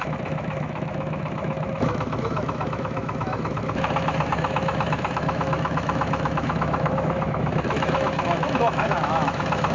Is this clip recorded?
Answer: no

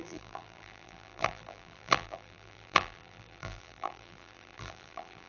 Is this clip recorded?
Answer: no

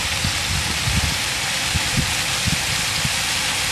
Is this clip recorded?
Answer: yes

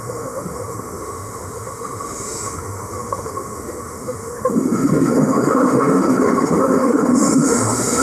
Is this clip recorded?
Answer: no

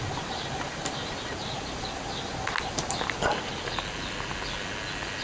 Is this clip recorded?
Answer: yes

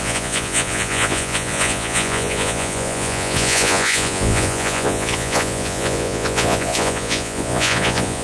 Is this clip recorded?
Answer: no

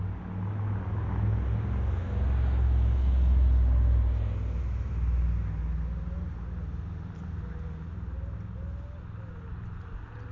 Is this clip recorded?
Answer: yes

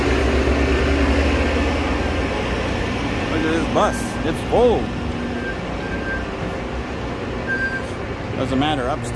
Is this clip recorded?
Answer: yes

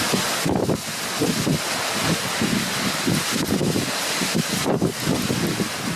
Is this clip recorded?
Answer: yes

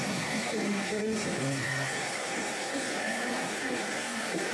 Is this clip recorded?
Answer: no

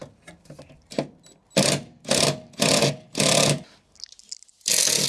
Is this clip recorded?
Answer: yes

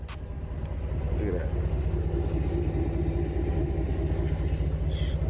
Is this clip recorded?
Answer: yes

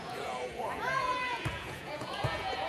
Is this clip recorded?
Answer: no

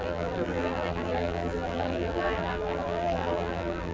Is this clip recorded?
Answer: no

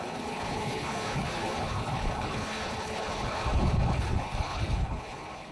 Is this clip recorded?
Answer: no